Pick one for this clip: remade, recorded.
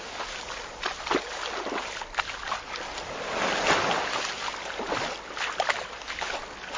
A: recorded